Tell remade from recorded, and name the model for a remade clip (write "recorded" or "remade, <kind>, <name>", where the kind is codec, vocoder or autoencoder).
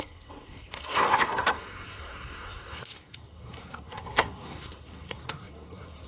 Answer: remade, codec, SNAC